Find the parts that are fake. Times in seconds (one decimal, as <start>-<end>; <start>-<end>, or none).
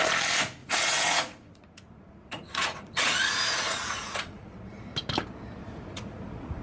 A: 0.6-4.5; 5.6-6.6